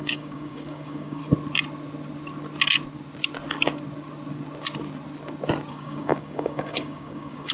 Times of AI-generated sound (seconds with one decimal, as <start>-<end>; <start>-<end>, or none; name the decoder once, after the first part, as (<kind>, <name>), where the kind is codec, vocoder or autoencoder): 0.0-1.2 (codec, DAC); 5.7-7.5